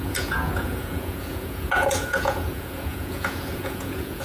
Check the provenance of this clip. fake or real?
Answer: fake